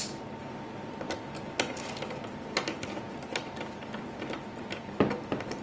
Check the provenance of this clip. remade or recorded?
recorded